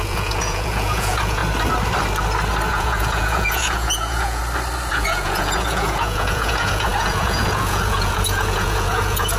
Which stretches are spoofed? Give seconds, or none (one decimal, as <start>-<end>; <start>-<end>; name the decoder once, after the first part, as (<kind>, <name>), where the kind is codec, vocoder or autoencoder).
0.0-1.4 (vocoder, Vocos); 2.7-4.4; 4.9-9.4